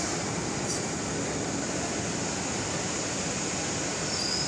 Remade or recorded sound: recorded